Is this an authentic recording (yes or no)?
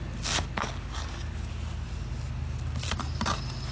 yes